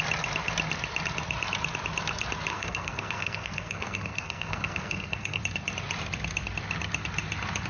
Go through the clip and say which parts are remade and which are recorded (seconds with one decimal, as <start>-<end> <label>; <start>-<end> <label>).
0.0-2.5 recorded; 2.5-5.4 remade; 5.4-7.7 recorded